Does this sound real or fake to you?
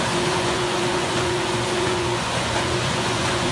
fake